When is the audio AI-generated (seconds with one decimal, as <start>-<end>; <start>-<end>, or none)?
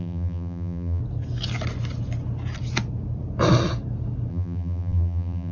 0.0-1.0; 4.3-5.5